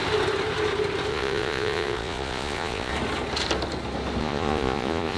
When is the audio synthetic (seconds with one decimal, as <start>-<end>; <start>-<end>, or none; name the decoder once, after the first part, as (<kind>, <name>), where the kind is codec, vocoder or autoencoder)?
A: 1.1-2.9 (vocoder, Vocos); 4.2-5.2